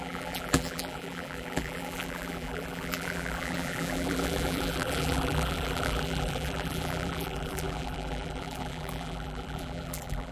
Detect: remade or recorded remade